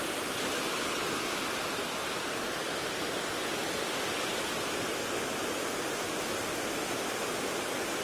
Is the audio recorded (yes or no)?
yes